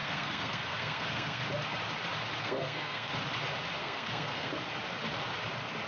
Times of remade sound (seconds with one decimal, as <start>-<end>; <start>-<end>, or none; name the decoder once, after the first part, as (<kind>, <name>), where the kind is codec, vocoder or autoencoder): 0.0-1.4 (codec, SNAC); 2.4-3.1; 3.8-4.5